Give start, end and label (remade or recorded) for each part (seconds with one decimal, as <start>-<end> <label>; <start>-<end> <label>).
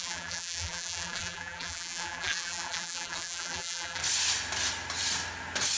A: 0.0-4.0 remade; 4.0-5.8 recorded